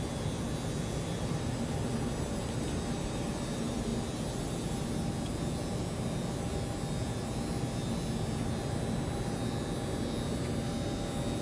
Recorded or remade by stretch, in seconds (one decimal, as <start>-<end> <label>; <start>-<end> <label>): 0.0-11.4 recorded